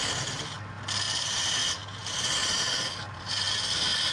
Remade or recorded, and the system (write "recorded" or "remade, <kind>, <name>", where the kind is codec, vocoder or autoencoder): recorded